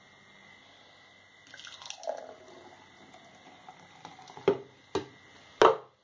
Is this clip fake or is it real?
real